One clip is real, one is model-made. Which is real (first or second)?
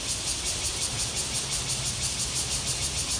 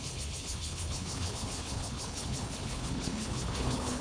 first